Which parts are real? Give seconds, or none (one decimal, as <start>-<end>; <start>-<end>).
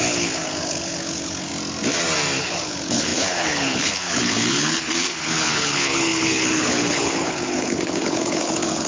1.5-2.4